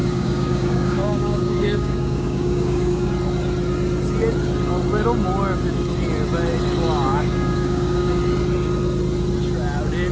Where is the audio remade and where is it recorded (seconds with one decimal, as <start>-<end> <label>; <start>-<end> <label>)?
0.0-3.1 remade; 3.1-7.1 recorded; 7.1-8.2 remade; 8.2-10.1 recorded